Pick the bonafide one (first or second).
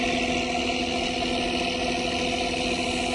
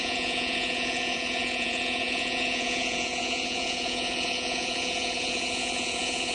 first